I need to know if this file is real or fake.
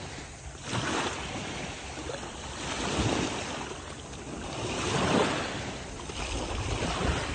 real